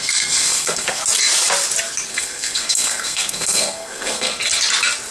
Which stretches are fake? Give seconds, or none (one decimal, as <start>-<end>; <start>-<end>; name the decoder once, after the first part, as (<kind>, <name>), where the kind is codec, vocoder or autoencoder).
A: 0.0-1.0 (codec, SNAC); 2.1-4.4